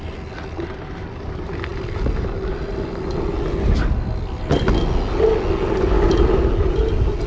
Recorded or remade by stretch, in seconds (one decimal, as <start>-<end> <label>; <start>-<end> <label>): 0.0-7.3 recorded